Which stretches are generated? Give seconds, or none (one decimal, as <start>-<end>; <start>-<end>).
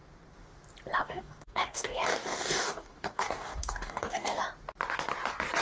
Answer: 1.0-4.4